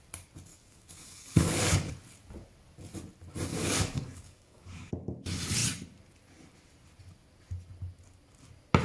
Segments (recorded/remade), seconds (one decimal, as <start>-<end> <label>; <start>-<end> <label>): 0.0-0.5 recorded; 0.5-1.9 remade; 1.9-3.5 recorded; 3.5-4.9 remade; 4.9-8.8 recorded